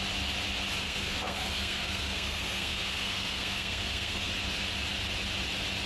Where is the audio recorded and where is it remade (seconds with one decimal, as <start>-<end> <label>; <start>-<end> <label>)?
0.0-0.8 recorded; 0.8-4.3 remade; 4.3-5.9 recorded